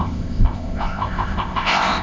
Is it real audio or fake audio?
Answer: fake